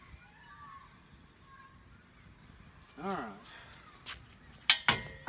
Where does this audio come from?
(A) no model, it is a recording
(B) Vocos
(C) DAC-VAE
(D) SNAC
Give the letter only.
A